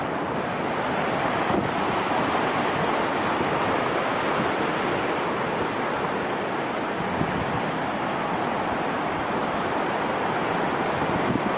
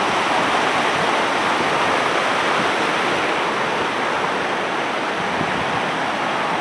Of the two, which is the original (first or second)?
second